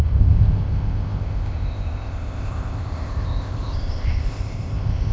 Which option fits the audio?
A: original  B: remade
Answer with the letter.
B